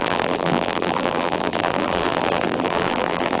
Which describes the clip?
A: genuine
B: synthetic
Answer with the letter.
B